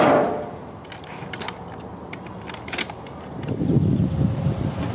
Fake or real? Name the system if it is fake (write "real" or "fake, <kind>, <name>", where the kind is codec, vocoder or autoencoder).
real